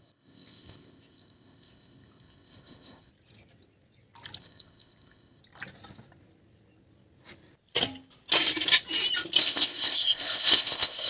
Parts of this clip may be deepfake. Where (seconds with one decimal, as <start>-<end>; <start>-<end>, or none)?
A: 0.0-3.1; 4.4-5.4; 9.4-11.1